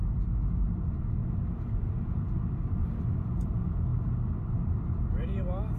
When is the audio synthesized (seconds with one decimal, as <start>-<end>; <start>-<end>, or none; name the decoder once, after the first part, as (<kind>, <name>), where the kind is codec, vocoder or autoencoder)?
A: 1.2-3.1 (vocoder, BigVGAN v2)